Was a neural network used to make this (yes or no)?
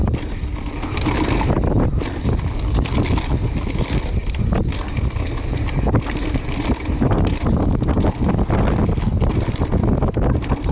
no